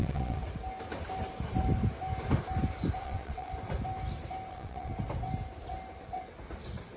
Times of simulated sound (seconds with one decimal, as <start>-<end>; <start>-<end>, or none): 0.0-0.4; 3.0-3.5; 4.5-4.9